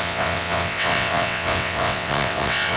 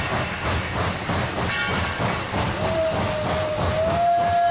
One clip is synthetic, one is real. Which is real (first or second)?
second